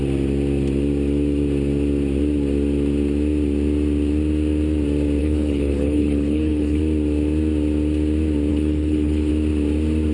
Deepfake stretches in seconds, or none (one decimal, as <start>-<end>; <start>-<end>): 5.2-6.8; 8.5-9.3